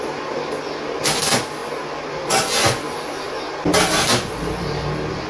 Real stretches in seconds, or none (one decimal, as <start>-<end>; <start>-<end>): 0.0-5.3